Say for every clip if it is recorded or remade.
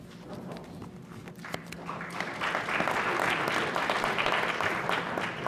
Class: recorded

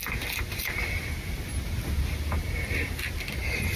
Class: recorded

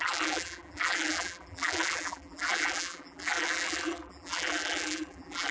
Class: remade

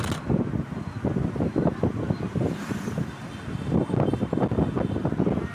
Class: recorded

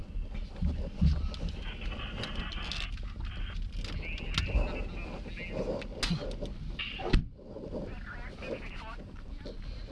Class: recorded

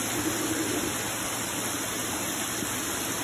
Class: recorded